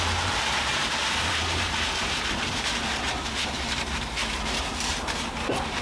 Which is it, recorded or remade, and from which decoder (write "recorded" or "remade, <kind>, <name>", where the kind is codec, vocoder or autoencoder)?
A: remade, vocoder, BigVGAN v2